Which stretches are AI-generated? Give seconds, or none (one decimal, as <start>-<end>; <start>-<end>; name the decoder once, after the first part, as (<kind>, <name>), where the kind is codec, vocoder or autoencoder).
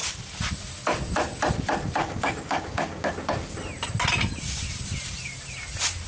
2.0-3.1 (codec, DAC)